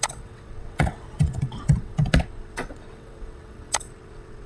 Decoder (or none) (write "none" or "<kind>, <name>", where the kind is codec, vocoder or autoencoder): vocoder, WaveNeXt